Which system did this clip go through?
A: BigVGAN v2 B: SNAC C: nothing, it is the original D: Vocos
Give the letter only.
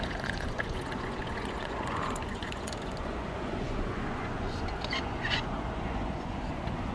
D